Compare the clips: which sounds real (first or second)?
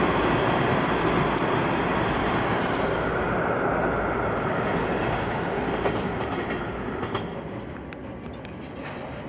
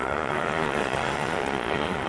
first